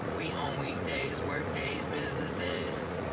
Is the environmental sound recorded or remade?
remade